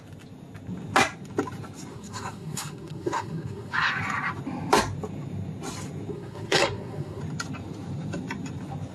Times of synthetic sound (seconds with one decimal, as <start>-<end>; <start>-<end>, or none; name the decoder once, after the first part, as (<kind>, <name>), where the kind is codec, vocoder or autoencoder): 1.9-3.9 (codec, SNAC); 6.1-7.2